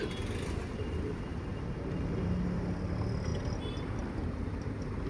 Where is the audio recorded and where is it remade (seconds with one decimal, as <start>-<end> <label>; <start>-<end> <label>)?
0.0-5.1 recorded